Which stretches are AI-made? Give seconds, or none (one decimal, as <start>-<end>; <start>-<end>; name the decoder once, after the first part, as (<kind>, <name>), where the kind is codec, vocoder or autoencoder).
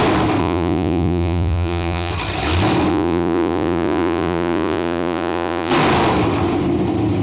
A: 0.4-2.1 (vocoder, Vocos); 2.9-5.7